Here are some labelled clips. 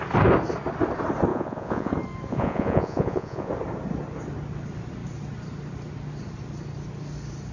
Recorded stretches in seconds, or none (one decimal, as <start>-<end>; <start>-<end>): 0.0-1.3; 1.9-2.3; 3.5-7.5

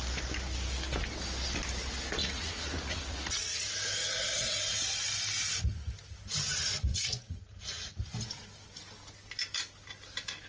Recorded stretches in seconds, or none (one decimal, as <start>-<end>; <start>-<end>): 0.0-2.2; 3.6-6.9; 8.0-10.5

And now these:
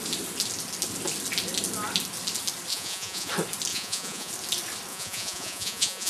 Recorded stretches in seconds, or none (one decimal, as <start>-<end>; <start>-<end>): 0.0-2.7; 3.3-3.7; 4.3-4.9

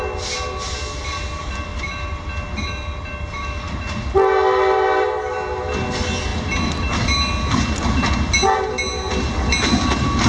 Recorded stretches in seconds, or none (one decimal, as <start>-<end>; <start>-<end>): 0.0-10.3

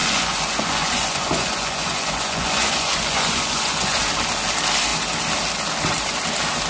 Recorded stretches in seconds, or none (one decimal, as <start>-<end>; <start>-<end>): 4.0-6.7